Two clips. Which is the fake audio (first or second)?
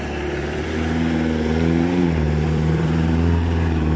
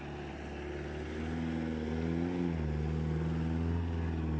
first